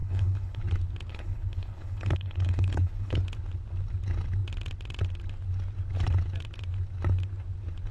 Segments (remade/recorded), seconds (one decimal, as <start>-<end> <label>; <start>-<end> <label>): 0.0-0.6 remade; 0.6-1.1 recorded; 1.1-3.2 remade; 3.2-7.9 recorded